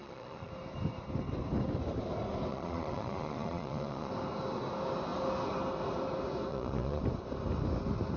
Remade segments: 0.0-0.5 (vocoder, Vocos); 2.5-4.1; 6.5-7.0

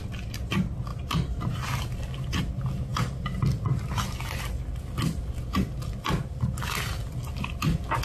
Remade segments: 0.9-1.6 (vocoder, BigVGAN v2)

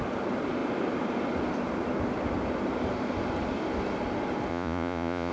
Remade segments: 4.5-5.3 (vocoder, Vocos)

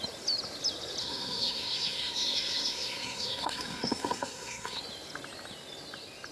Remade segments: 1.0-4.8 (codec, SNAC)

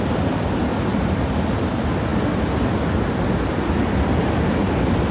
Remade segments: 0.7-1.3 (vocoder, BigVGAN v2); 2.1-2.8

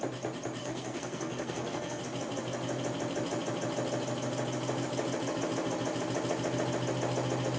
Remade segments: 0.6-2.0 (codec, SNAC)

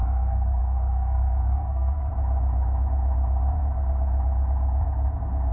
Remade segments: 0.0-2.1 (codec, SNAC)

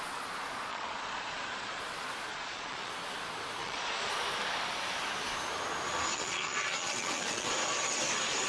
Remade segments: 0.7-1.8 (vocoder, Vocos); 2.3-2.9; 3.6-4.1; 6.1-7.5